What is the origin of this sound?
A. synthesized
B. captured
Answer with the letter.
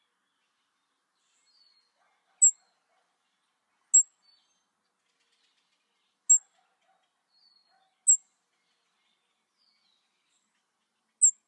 B